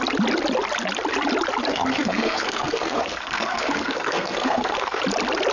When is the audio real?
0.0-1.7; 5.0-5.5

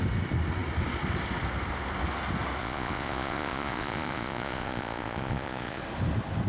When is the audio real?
0.0-2.6; 5.8-6.5

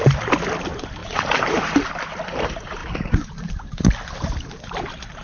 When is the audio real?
0.0-1.0; 1.5-2.8; 4.8-5.2

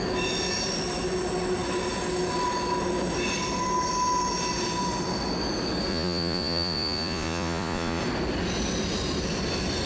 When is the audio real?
0.0-5.9; 8.0-9.9

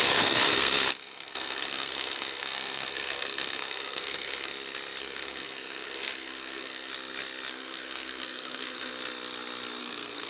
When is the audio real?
4.5-5.0; 6.9-7.5; 8.9-9.8

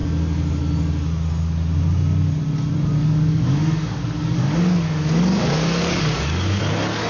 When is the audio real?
0.0-3.0; 6.6-7.1

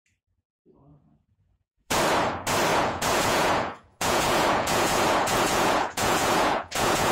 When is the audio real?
0.0-0.9; 2.0-2.7